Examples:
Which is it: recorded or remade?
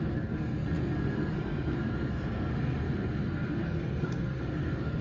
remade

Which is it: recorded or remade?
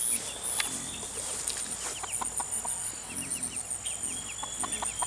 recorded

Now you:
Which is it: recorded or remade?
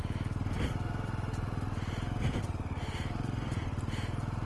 recorded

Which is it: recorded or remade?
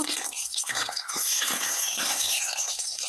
remade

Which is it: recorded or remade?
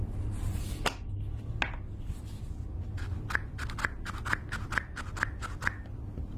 recorded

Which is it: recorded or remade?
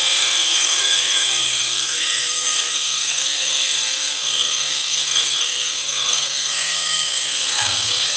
remade